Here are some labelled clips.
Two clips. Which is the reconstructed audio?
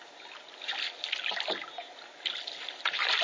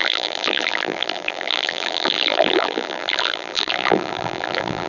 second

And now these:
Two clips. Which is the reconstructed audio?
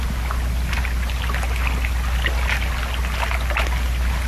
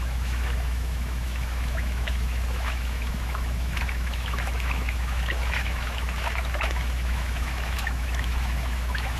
second